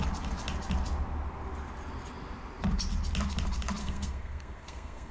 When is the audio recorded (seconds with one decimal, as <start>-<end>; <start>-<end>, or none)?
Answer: 0.0-3.8